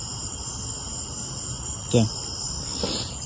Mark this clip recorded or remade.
recorded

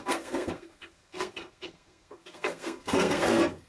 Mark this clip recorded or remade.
remade